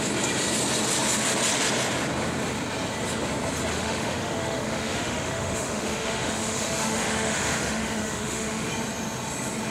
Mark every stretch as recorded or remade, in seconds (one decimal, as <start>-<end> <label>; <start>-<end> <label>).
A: 0.0-3.7 recorded; 3.7-8.7 remade; 8.7-9.7 recorded